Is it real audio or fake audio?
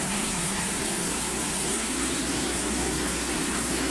fake